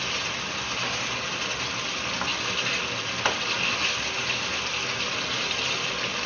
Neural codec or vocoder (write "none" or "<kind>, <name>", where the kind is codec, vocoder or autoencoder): none